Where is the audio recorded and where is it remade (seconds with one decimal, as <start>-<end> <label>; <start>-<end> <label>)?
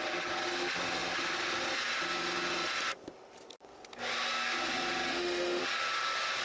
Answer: 0.0-5.1 recorded; 5.1-5.6 remade; 5.6-6.4 recorded